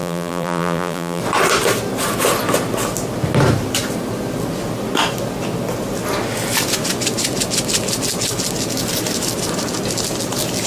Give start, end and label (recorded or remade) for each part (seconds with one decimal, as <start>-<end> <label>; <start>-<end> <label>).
0.0-1.2 remade; 1.2-10.7 recorded